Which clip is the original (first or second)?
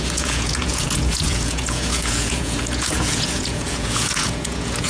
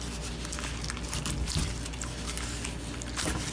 second